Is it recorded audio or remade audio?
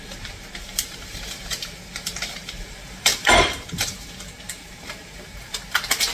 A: remade